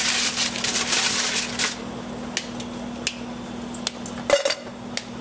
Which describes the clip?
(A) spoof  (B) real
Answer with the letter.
B